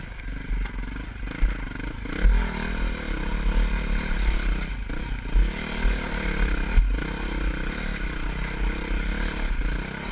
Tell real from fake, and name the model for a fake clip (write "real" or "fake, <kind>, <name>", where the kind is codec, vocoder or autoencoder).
real